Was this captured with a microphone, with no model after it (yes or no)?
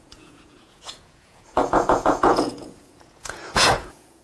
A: no